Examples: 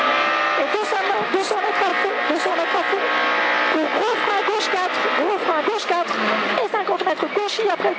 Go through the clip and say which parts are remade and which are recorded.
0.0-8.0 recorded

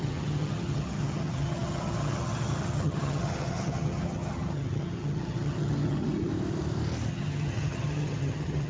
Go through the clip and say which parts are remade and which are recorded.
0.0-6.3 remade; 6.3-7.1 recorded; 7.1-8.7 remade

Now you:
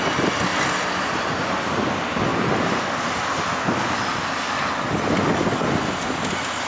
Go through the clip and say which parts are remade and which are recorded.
0.0-6.7 recorded

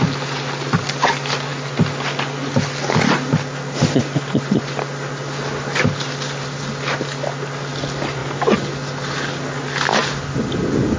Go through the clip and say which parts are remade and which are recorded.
0.0-11.0 recorded

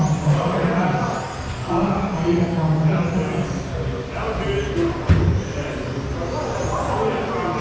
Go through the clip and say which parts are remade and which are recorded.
0.0-7.6 recorded

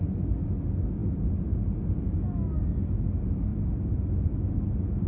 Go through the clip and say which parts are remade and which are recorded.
0.0-5.1 recorded

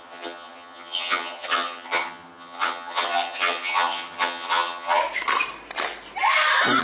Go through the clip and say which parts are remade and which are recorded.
0.0-5.0 remade; 5.0-6.8 recorded